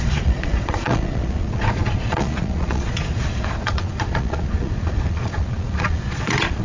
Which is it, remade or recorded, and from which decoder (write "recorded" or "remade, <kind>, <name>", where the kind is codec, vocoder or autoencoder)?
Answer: remade, vocoder, Vocos